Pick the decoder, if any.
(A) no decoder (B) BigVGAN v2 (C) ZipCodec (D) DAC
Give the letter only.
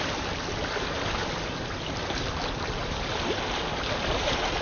A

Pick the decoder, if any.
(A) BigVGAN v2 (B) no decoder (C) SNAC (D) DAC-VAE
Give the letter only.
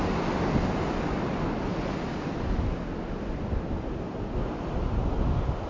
B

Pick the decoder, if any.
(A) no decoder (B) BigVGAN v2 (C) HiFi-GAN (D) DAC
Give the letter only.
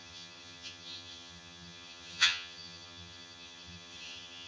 C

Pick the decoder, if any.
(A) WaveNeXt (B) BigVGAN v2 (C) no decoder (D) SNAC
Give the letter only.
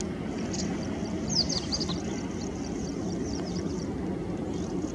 C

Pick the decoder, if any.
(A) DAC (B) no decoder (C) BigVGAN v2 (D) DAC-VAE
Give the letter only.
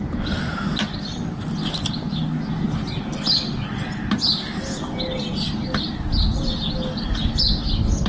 B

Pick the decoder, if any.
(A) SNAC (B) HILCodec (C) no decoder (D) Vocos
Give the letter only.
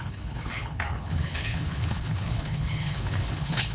B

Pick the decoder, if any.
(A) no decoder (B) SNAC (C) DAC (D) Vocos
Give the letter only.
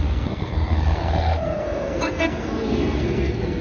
B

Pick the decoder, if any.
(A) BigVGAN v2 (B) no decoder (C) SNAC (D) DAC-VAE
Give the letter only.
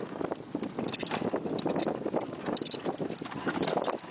B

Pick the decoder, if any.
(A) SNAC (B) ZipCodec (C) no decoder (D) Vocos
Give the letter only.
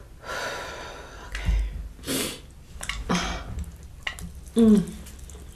C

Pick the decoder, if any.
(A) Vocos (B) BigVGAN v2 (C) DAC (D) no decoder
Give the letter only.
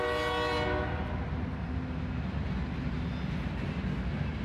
D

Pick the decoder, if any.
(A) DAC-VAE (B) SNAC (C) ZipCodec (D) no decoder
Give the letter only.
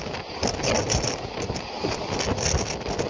D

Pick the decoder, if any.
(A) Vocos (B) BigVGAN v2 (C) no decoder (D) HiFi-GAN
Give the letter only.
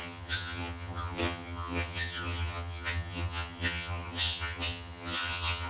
D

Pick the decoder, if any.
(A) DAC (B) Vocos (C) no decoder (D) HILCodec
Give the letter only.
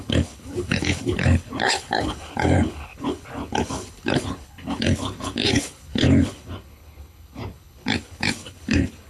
D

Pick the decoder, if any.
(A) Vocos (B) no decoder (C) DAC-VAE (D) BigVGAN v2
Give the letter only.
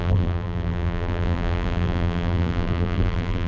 D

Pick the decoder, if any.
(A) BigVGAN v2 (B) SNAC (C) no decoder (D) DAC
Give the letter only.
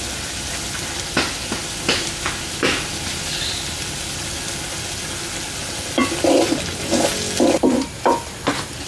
C